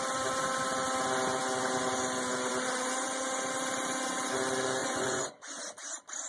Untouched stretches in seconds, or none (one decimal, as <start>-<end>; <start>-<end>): 0.0-4.8; 5.6-6.3